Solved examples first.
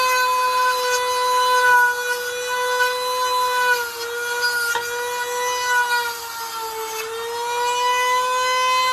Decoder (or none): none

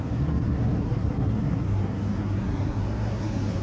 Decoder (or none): codec, SNAC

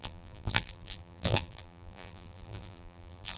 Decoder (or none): vocoder, BigVGAN v2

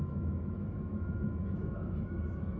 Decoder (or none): autoencoder, DAC-VAE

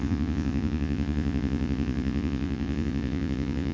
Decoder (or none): vocoder, Vocos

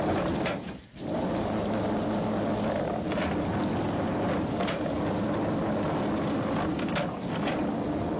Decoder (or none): none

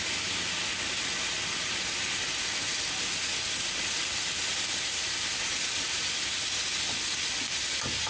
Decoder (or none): none